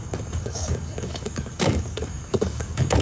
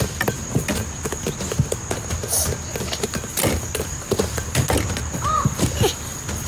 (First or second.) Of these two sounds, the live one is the second